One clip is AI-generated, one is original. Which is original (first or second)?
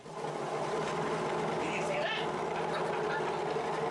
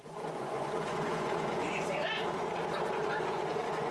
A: first